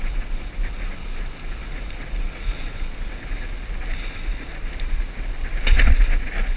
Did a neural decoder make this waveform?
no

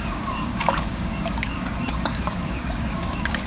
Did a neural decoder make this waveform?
yes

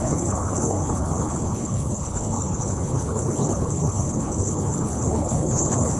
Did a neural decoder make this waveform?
yes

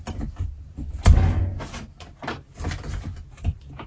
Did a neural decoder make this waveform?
no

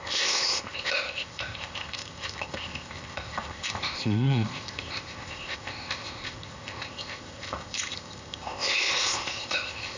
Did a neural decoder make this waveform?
yes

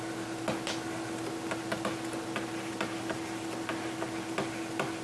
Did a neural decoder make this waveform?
no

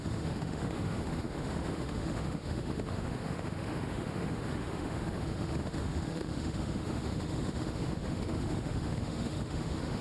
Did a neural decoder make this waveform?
yes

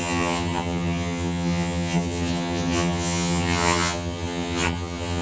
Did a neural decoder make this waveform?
yes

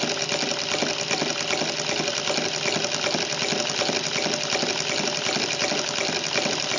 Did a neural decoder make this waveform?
no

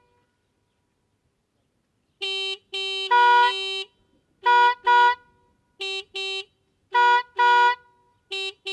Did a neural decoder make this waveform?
no